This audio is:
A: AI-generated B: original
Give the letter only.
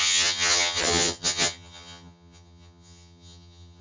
A